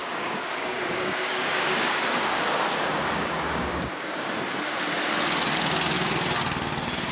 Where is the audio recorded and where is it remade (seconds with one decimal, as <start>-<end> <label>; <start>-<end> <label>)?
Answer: 0.0-4.3 remade; 4.3-7.1 recorded